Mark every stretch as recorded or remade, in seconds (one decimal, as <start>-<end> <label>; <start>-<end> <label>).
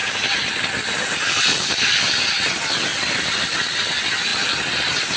0.0-5.2 recorded